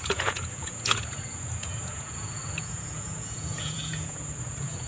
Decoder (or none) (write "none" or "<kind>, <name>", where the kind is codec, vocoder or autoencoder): vocoder, Vocos